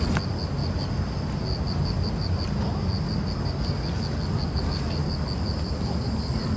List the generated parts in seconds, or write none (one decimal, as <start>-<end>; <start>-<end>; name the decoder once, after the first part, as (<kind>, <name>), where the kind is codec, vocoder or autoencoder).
none